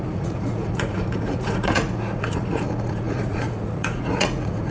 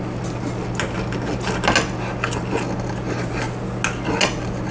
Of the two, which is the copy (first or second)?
first